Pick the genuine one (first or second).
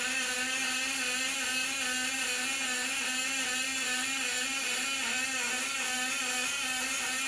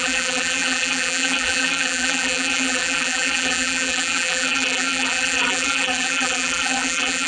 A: first